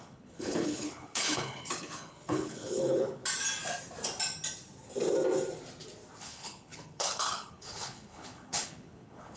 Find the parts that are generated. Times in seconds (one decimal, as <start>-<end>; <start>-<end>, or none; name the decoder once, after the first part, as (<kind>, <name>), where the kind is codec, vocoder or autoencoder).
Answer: 0.0-3.2 (codec, HILCodec); 6.2-9.4